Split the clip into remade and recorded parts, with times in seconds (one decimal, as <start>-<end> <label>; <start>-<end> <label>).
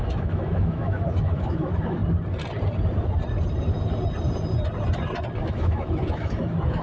0.0-2.0 remade; 2.0-5.4 recorded; 5.4-6.8 remade